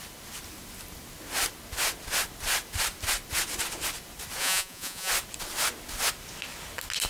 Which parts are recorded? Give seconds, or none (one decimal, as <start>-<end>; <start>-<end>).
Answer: 0.0-4.4; 5.1-7.1